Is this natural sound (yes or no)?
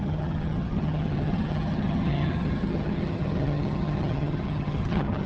no